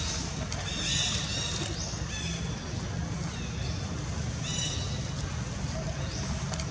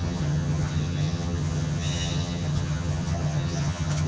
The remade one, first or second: second